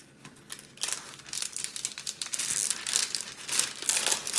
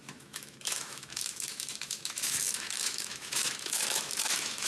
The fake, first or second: second